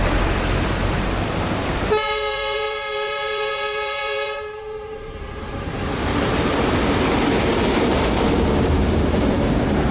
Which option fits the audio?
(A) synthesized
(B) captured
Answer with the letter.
A